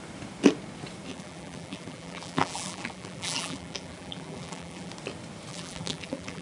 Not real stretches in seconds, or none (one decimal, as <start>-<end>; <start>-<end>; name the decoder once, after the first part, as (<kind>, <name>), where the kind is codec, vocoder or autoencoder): 1.1-4.9 (vocoder, BigVGAN v2); 5.5-6.4